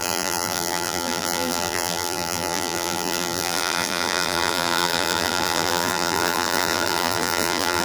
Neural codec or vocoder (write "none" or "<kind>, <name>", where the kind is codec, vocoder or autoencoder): vocoder, BigVGAN v2